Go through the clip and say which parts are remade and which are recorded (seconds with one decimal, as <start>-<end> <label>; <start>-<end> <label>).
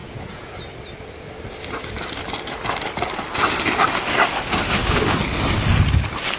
0.0-0.5 remade; 0.5-6.4 recorded